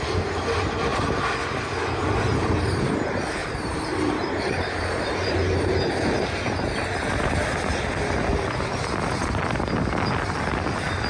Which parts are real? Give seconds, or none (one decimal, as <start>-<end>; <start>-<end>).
0.0-3.4; 5.5-11.1